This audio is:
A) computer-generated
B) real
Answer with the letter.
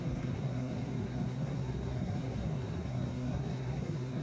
A